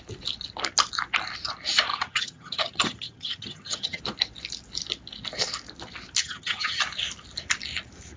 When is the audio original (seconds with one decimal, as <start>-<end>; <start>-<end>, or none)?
0.0-1.9; 4.0-6.2; 6.8-8.2